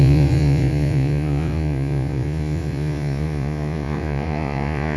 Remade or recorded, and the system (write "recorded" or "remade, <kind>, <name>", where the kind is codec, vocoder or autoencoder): remade, vocoder, Vocos